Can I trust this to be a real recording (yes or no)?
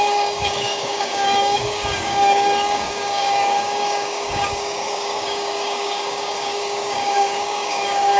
no